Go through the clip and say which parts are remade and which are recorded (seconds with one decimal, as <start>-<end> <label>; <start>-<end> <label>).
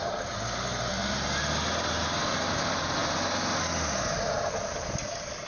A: 0.0-2.4 recorded; 2.4-3.0 remade; 3.0-5.5 recorded